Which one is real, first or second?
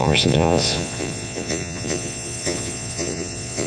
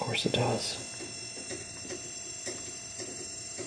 second